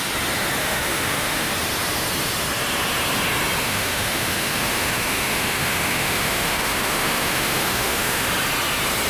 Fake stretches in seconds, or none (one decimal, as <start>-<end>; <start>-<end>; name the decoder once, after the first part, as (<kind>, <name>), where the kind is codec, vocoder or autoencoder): 0.6-1.5 (autoencoder, DAC-VAE); 3.6-8.3

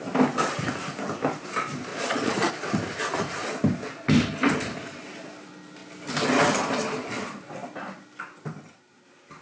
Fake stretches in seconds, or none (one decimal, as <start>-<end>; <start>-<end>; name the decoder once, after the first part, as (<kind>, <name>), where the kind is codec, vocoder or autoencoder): 1.9-2.5 (vocoder, Vocos)

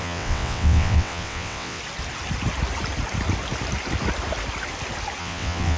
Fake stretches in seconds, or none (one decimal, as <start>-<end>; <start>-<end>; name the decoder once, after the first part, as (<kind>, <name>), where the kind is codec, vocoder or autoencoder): 0.0-1.8 (vocoder, WaveNeXt); 5.2-5.8

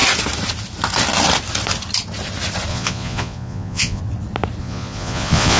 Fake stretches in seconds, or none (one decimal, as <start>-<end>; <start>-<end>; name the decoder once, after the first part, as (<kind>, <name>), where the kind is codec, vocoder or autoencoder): 2.7-4.0 (vocoder, Vocos); 4.6-5.6

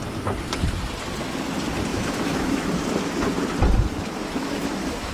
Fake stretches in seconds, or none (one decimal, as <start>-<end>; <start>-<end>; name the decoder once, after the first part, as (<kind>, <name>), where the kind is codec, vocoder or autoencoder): 1.9-2.7 (autoencoder, DAC-VAE); 4.2-5.1

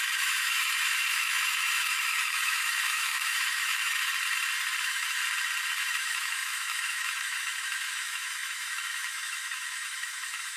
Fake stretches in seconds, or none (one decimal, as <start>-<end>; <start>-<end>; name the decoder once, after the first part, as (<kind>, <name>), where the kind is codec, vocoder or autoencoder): 0.0-4.1 (autoencoder, DAC-VAE); 4.8-5.2; 5.8-10.6

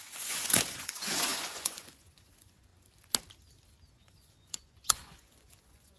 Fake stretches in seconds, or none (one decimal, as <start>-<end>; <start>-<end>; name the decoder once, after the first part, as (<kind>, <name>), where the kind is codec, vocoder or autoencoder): 0.0-2.7 (vocoder, Vocos); 3.9-6.0